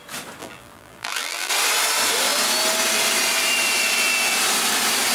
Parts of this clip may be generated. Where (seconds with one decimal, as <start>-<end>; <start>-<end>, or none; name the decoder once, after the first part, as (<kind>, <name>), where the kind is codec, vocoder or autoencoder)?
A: 0.4-1.5 (vocoder, BigVGAN v2)